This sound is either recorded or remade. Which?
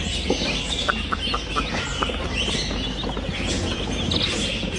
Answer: recorded